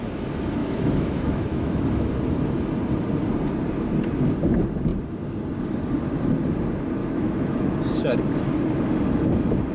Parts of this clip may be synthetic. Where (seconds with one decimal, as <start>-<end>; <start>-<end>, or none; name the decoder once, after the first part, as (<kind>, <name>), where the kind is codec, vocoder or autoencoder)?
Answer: 0.6-2.1 (autoencoder, DAC-VAE); 7.0-7.7